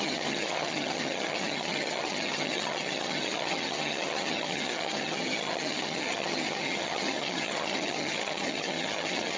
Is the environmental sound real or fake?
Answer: fake